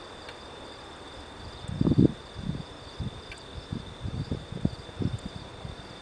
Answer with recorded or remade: recorded